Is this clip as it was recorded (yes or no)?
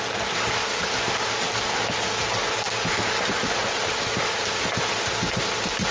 yes